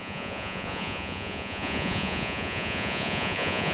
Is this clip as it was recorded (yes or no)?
no